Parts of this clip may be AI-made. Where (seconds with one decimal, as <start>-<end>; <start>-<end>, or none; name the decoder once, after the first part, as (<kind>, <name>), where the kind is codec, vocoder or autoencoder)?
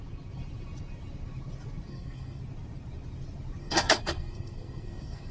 1.9-2.4 (codec, SNAC); 3.6-5.3